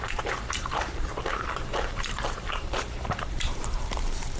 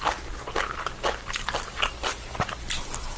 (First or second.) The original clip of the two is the second